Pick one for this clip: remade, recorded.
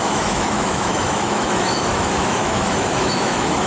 remade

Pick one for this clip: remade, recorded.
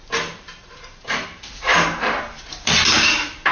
remade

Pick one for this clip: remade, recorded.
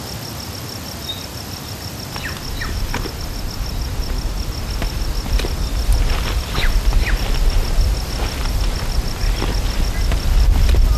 recorded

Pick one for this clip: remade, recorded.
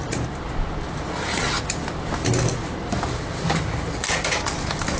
recorded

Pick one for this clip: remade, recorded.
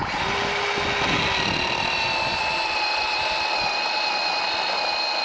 recorded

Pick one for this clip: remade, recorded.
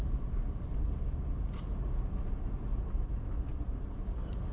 recorded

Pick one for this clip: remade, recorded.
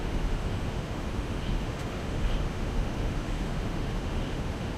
remade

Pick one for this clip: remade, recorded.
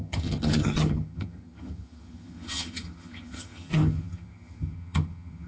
remade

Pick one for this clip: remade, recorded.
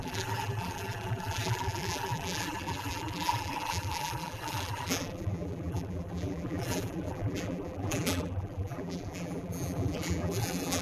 remade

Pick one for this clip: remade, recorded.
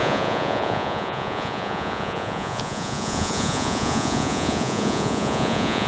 remade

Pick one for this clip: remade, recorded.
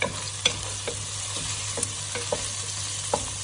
recorded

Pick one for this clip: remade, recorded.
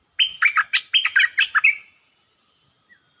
recorded